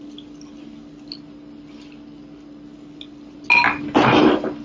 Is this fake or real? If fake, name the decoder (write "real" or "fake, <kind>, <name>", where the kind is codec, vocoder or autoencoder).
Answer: real